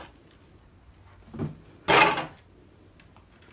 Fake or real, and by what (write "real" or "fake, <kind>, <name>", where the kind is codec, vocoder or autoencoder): real